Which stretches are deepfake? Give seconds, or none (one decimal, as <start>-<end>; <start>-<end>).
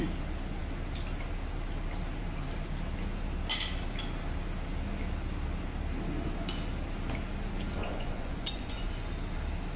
7.8-8.9